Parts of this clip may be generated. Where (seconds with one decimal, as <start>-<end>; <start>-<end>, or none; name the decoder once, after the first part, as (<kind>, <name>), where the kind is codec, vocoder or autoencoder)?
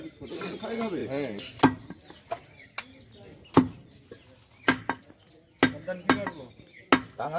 none